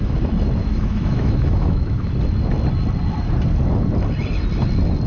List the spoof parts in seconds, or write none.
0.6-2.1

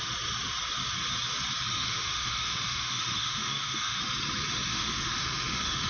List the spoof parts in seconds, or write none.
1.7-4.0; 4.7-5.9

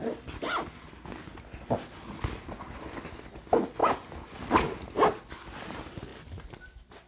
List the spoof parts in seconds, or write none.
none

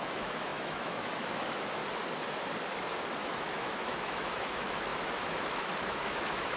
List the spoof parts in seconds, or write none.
0.0-1.8; 3.2-6.6